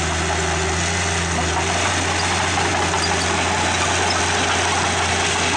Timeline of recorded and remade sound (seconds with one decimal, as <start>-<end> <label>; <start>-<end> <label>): 0.0-5.6 recorded